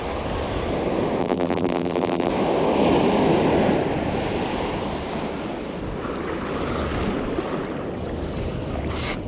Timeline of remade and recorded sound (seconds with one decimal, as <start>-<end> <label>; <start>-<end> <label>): 0.0-1.2 recorded; 1.2-2.3 remade; 2.3-9.3 recorded